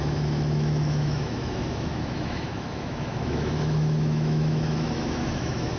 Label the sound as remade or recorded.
remade